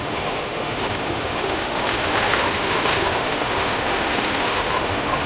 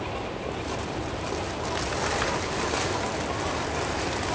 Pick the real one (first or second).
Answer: second